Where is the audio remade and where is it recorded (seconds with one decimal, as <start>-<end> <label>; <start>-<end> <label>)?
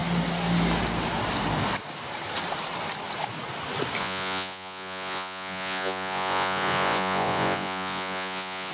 0.0-4.0 recorded; 4.0-8.7 remade